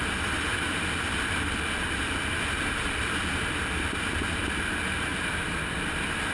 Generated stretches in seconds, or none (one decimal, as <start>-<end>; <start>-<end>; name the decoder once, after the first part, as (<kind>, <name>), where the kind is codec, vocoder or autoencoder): none